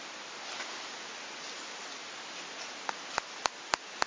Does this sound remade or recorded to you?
recorded